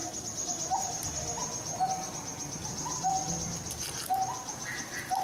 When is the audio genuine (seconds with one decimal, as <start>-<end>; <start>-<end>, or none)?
0.0-5.2